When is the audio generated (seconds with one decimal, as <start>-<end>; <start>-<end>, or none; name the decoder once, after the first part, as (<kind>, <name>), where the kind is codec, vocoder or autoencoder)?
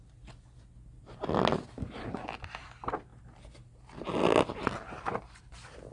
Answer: none